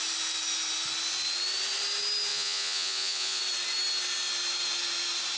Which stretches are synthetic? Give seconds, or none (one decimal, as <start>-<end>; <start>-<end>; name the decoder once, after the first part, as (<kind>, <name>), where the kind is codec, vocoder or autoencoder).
2.3-3.4 (vocoder, Vocos)